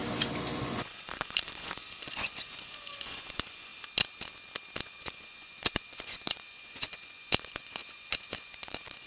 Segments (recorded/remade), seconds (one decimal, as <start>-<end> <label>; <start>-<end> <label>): 0.0-0.6 recorded; 0.6-3.7 remade; 3.7-4.8 recorded; 4.8-9.1 remade